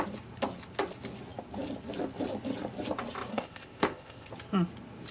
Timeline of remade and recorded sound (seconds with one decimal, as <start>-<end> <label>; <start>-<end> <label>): 0.0-3.3 recorded; 3.3-4.3 remade; 4.3-5.1 recorded